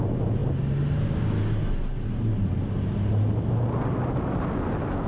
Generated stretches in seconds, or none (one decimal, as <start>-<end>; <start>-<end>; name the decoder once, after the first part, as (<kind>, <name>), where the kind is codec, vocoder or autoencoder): none